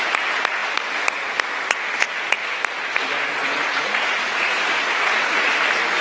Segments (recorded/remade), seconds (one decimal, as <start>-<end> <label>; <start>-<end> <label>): 0.0-3.4 recorded; 3.4-5.5 remade; 5.5-6.0 recorded